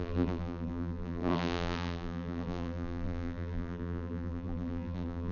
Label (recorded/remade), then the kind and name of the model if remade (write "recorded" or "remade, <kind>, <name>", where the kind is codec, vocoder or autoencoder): remade, vocoder, BigVGAN v2